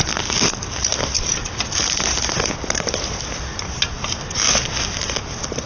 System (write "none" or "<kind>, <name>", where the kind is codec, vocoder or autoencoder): none